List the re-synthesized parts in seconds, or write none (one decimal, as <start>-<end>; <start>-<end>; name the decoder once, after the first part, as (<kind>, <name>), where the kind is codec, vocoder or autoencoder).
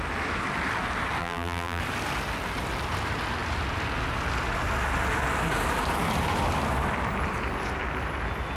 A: 1.2-1.8 (vocoder, BigVGAN v2)